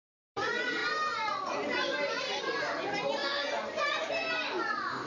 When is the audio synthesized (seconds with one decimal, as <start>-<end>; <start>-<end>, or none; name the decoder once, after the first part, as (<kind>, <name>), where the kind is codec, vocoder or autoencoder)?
none